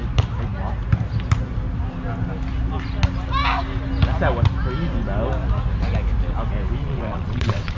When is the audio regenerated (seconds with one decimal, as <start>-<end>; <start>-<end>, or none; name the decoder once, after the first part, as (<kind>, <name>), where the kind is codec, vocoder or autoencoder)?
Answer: 6.8-7.8 (vocoder, WaveNeXt)